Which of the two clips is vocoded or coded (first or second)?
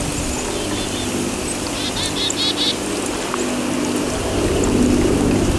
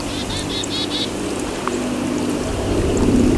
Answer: second